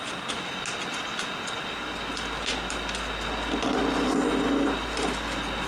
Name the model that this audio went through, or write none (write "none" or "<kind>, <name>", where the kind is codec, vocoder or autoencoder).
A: none